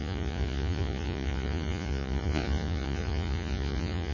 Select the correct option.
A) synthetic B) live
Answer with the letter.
A